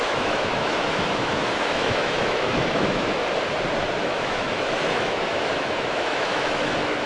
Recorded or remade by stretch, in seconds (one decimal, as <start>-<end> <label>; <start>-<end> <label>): 0.0-3.2 remade; 3.2-4.0 recorded; 4.0-7.1 remade